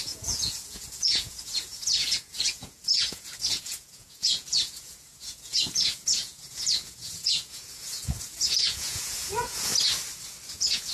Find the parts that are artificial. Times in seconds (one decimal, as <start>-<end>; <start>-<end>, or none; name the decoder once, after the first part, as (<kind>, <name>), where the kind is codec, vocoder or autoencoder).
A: 0.0-9.7 (vocoder, Vocos); 10.5-10.9